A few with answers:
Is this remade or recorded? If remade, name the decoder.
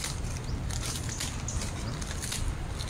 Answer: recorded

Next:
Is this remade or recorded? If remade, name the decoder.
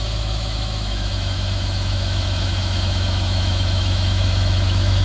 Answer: remade, autoencoder, DAC-VAE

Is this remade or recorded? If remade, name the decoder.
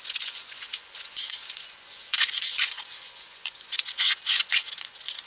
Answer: remade, vocoder, Vocos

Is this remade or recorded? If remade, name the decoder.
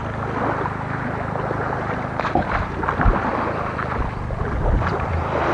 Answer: recorded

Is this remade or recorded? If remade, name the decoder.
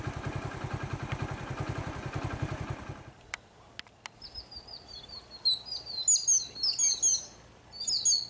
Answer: recorded